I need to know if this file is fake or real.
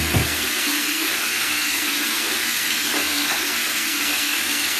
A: fake